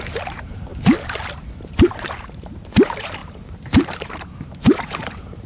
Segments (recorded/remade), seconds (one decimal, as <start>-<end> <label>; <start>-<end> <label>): 0.0-0.7 remade; 0.7-1.6 recorded; 1.6-5.5 remade